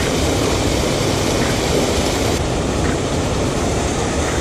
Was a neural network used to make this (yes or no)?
yes